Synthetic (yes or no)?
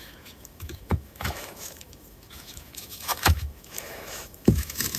yes